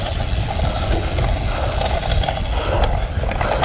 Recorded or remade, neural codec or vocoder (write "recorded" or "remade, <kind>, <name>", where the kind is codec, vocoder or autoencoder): recorded